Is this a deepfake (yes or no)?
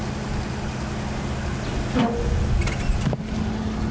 no